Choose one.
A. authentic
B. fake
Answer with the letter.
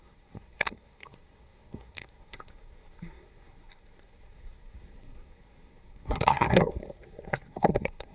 B